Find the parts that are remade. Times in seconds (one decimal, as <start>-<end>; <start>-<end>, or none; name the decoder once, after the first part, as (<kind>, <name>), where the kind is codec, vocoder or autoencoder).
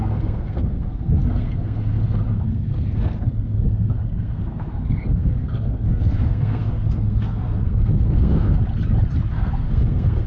0.0-8.6 (codec, SNAC); 9.3-10.3